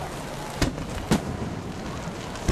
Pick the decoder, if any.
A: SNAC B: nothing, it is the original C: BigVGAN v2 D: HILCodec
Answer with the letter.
B